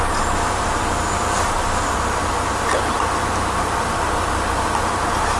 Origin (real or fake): fake